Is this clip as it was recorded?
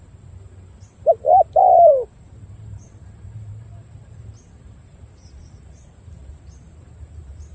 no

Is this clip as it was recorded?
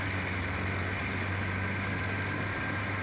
yes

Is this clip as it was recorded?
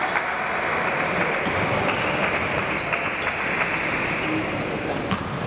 yes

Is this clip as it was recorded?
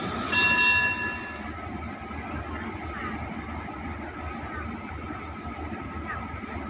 yes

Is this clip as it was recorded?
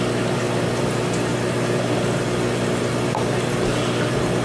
yes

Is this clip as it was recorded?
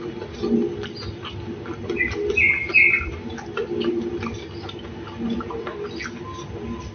yes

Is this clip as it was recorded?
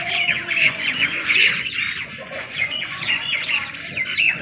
no